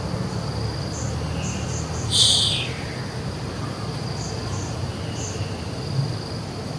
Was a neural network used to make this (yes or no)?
yes